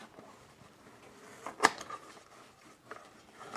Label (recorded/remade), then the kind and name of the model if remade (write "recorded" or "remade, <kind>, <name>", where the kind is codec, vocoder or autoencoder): recorded